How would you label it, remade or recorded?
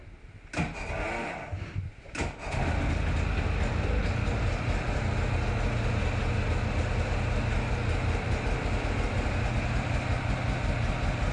recorded